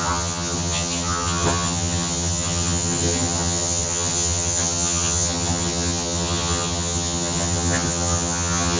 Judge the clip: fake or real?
fake